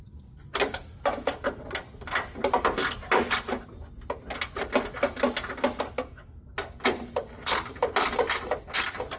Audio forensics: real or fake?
real